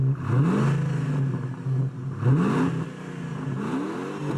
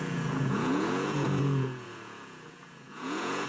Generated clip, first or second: second